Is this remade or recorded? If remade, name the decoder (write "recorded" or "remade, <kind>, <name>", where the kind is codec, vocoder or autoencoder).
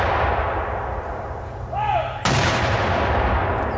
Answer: recorded